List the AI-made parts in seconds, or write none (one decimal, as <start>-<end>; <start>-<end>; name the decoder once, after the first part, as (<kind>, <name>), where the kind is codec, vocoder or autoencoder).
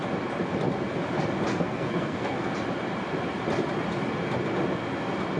1.5-2.5 (codec, SNAC)